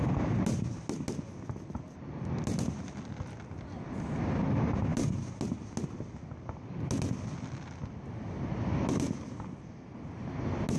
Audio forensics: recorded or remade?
recorded